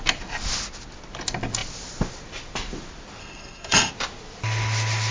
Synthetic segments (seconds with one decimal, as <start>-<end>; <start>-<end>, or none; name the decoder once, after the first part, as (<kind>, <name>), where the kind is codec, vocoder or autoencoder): 3.2-3.9 (codec, SNAC)